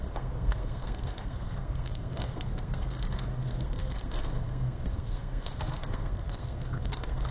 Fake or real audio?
fake